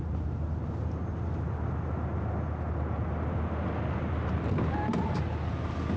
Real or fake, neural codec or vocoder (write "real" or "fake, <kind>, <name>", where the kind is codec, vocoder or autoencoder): real